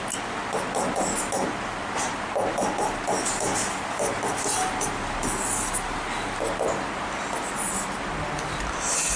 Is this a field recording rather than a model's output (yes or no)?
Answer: yes